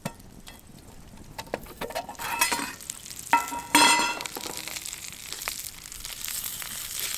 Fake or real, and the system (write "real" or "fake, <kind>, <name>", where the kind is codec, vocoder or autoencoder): real